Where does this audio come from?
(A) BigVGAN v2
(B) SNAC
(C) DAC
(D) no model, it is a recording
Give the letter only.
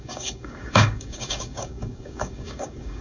C